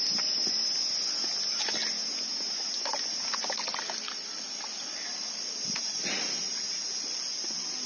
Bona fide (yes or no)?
yes